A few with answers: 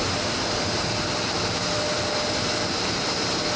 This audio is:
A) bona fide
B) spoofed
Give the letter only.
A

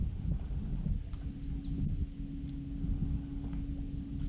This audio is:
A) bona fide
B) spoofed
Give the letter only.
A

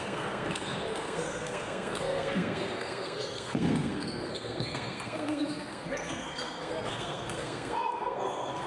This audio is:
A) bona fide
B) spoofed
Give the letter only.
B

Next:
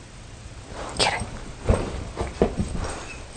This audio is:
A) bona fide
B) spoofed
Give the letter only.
A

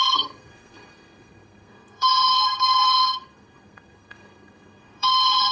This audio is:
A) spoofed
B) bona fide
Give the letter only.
A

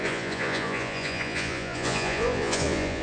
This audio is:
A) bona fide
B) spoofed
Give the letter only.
B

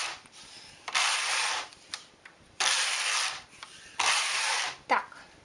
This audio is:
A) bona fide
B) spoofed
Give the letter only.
B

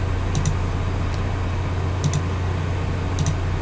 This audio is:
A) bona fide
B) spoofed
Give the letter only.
A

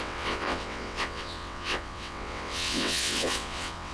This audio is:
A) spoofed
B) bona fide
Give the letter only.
A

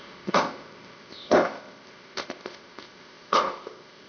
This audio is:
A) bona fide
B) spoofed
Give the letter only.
B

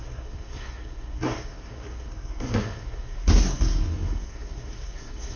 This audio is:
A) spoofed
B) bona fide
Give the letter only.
A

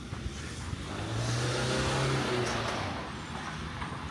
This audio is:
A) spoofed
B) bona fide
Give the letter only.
B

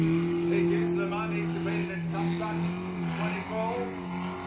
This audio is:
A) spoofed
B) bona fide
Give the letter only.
B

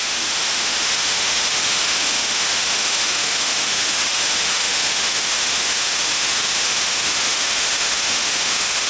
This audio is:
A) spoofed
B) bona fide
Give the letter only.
A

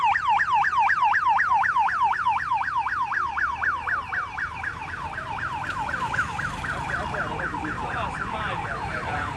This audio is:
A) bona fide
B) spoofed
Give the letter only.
B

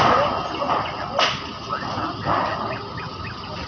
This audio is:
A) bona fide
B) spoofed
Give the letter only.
A